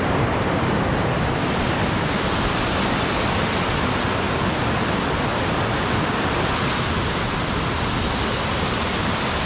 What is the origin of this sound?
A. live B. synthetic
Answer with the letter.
A